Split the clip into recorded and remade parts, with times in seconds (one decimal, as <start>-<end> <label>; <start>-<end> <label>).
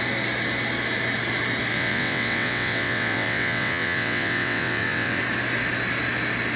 0.0-1.7 recorded; 1.7-5.2 remade; 5.2-6.6 recorded